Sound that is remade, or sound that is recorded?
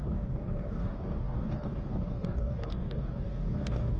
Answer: remade